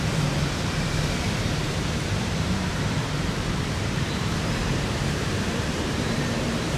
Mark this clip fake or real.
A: fake